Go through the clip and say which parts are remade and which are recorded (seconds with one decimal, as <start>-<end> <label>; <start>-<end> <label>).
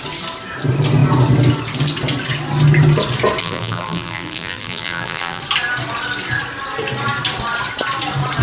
0.0-3.4 recorded; 3.4-5.4 remade; 5.4-8.4 recorded